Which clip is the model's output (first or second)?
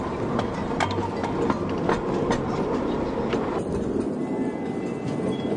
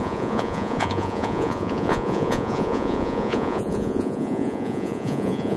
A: second